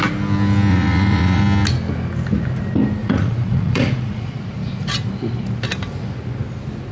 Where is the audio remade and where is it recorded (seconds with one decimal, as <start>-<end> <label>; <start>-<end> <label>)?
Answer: 0.0-0.7 recorded; 0.7-1.4 remade; 1.4-3.0 recorded; 3.0-4.2 remade; 4.2-6.9 recorded